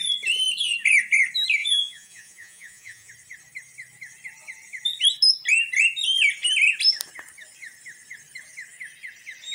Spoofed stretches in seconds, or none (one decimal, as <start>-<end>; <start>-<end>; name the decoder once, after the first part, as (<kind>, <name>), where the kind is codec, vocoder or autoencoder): 1.6-3.1 (vocoder, Vocos)